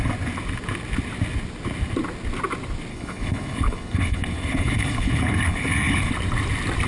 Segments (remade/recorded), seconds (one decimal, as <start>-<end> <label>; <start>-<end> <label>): 0.0-2.9 recorded; 2.9-6.1 remade; 6.1-6.9 recorded